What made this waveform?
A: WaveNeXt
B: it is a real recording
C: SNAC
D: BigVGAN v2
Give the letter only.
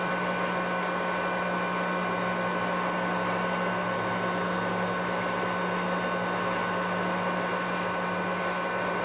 B